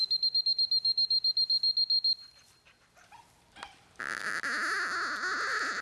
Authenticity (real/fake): real